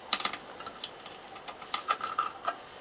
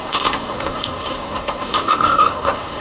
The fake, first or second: second